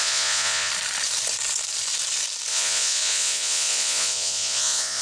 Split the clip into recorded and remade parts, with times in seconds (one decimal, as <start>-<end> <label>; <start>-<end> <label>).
0.0-0.7 remade; 0.7-2.5 recorded; 2.5-5.0 remade